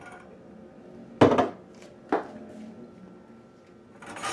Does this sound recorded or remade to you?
recorded